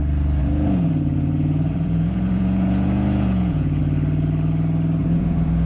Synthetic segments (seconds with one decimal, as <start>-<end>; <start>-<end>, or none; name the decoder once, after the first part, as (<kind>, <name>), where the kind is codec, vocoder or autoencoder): 0.4-3.8 (vocoder, Vocos); 5.0-5.7